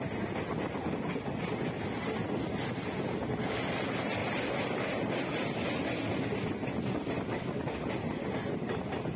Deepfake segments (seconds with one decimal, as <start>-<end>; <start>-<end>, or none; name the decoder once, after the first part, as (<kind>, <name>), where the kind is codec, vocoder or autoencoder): none